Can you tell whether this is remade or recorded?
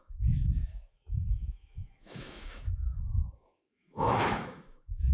remade